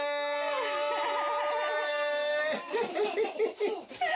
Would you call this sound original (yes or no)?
yes